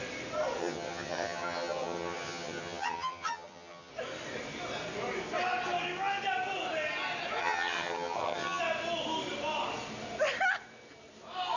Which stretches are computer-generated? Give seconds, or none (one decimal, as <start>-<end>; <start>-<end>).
0.6-3.9; 7.4-8.6